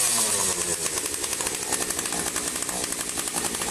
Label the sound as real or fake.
real